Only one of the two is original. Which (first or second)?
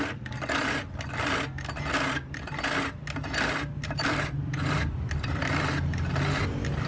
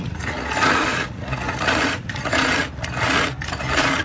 first